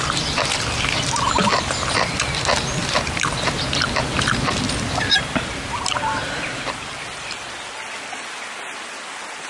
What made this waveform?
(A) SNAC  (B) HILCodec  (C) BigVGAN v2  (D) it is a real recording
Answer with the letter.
D